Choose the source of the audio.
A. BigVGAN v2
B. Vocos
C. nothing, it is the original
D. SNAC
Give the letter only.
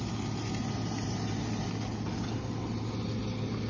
C